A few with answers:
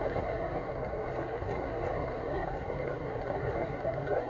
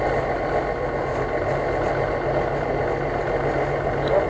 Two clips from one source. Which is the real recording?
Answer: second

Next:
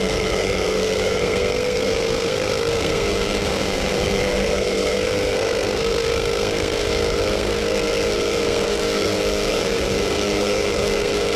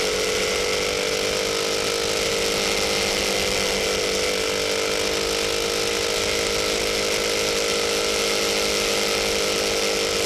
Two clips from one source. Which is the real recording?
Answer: second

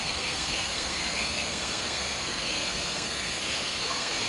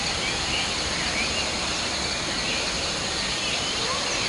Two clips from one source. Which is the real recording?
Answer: second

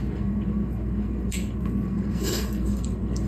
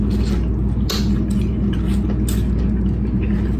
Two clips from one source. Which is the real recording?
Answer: second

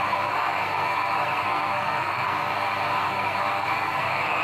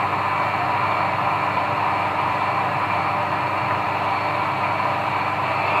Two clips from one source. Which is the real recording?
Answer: second